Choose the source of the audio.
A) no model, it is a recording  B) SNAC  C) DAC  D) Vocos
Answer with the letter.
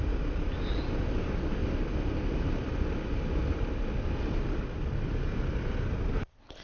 A